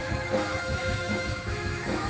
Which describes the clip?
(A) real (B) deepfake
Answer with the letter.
B